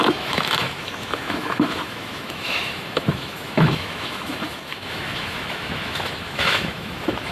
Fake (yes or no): yes